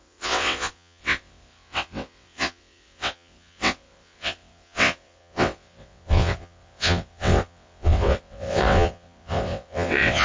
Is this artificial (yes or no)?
yes